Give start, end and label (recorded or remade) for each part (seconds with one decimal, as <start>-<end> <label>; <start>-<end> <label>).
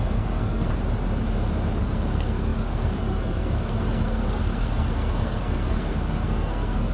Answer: 0.0-0.7 remade; 0.7-1.8 recorded; 1.8-6.9 remade